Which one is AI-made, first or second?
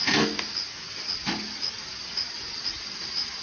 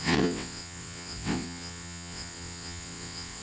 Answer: second